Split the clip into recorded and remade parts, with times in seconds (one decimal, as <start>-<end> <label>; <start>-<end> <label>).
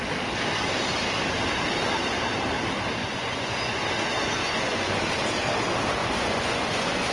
0.0-3.0 recorded; 3.0-3.8 remade; 3.8-4.4 recorded; 4.4-4.9 remade; 4.9-6.0 recorded; 6.0-7.1 remade